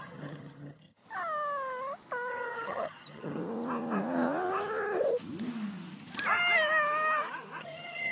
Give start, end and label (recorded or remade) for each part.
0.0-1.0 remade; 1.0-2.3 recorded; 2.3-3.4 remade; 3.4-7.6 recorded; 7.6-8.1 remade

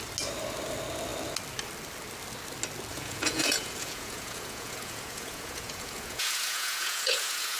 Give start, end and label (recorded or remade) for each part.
0.0-2.9 recorded; 2.9-7.6 remade

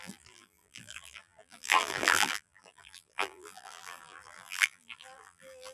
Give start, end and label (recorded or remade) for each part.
0.0-5.7 remade

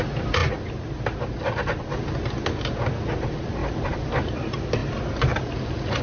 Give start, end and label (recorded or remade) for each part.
0.0-3.6 recorded; 3.6-4.1 remade; 4.1-4.8 recorded; 4.8-6.0 remade

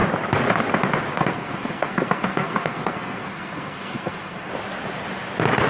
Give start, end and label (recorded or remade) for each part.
0.0-1.1 recorded; 1.1-4.5 remade; 4.5-5.7 recorded

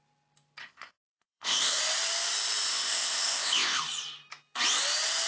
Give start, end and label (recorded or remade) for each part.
0.0-0.6 recorded; 0.6-1.8 remade; 1.8-2.7 recorded; 2.7-3.8 remade; 3.8-5.3 recorded